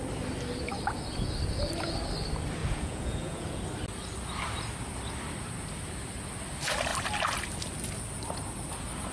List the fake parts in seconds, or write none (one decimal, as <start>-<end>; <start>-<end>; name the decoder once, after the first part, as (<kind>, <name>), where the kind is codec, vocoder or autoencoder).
2.6-3.6 (vocoder, Vocos)